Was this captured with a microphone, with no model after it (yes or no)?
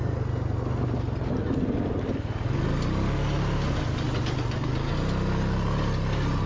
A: yes